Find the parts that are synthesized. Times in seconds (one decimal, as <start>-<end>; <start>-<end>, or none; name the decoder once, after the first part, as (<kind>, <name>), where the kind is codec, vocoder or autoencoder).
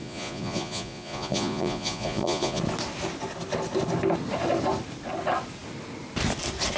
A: 0.0-2.6 (vocoder, Vocos)